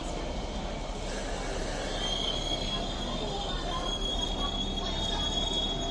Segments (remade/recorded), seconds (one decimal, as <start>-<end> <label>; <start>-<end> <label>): 0.0-5.9 recorded